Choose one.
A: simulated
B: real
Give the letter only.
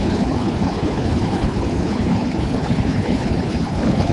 A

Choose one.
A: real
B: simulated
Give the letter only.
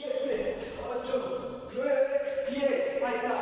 B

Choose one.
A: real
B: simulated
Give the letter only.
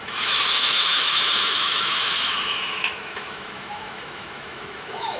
B